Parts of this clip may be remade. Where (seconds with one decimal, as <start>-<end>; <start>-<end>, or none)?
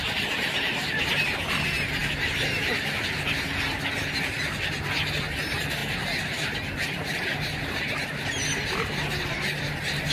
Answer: none